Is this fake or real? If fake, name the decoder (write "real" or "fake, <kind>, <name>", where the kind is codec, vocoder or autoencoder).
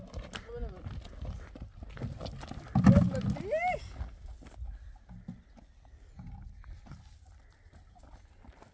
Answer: real